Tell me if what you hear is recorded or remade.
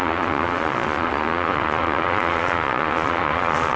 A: remade